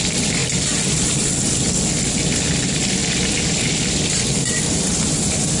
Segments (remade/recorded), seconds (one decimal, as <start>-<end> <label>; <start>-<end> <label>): 0.0-3.0 remade; 3.0-3.9 recorded; 3.9-5.6 remade